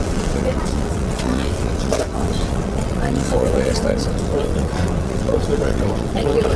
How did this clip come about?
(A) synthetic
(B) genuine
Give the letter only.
A